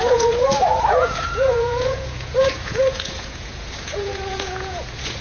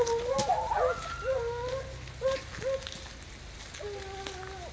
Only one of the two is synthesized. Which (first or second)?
first